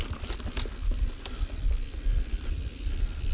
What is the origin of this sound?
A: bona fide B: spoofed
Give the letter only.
A